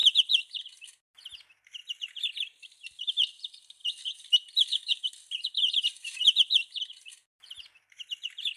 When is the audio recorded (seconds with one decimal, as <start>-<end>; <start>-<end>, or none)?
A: 0.0-1.8; 3.1-7.2